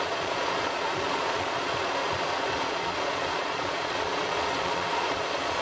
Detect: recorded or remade remade